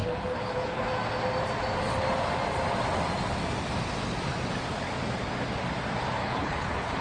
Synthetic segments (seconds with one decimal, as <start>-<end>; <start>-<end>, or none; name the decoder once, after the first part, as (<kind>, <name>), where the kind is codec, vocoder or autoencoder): 0.0-0.9 (codec, HILCodec); 6.2-7.0